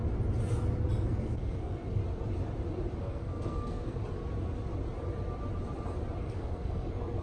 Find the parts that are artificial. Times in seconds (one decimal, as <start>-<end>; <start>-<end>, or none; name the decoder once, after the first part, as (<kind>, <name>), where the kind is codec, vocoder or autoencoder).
1.0-2.0 (codec, SNAC); 3.0-4.0; 6.2-7.2